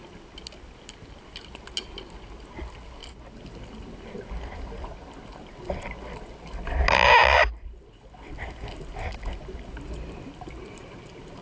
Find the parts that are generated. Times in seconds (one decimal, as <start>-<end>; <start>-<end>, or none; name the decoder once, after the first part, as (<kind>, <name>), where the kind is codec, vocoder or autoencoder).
none